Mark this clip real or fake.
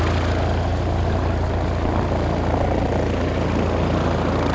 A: real